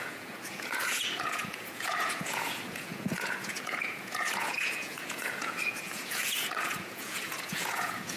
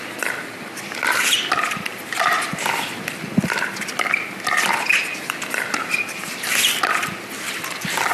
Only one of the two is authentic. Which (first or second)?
second